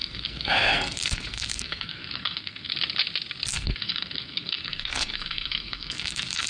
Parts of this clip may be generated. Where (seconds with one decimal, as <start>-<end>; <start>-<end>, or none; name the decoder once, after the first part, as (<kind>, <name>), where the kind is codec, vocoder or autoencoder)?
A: 0.0-2.7 (codec, SNAC); 3.5-6.5